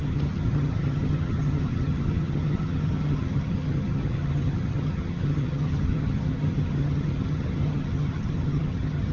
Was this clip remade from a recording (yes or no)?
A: yes